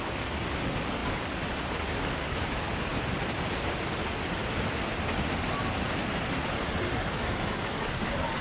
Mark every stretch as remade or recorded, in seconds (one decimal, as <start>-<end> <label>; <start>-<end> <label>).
0.0-2.9 remade; 2.9-7.1 recorded; 7.1-8.4 remade